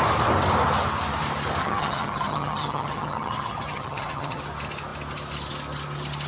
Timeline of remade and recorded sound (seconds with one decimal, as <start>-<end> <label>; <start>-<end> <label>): 0.0-1.6 recorded; 1.6-4.4 remade; 4.4-6.3 recorded